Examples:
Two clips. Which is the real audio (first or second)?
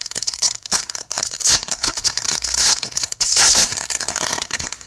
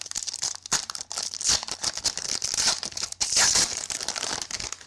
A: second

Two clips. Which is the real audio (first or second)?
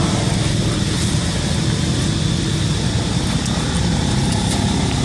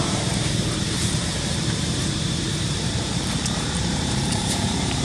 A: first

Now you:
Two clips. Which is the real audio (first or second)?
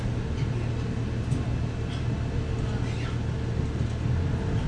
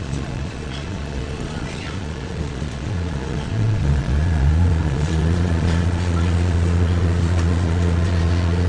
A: first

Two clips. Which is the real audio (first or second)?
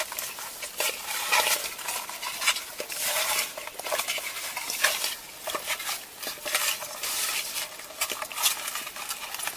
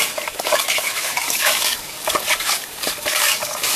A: first